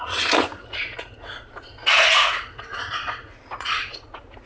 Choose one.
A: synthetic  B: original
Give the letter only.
A